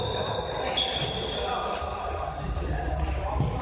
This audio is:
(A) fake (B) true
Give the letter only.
B